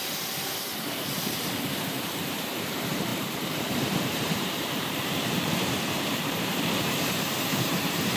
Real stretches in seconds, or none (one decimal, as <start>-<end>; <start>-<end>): none